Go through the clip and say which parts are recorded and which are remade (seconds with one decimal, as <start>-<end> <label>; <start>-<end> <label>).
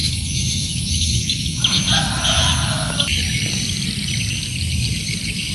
0.0-1.9 remade; 1.9-5.5 recorded